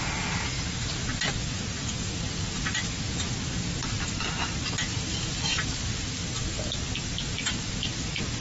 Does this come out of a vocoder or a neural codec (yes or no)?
no